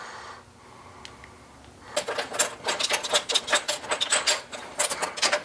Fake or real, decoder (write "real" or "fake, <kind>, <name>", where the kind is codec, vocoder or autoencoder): real